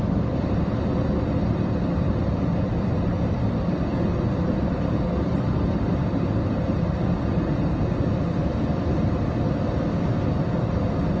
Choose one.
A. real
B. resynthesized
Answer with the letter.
A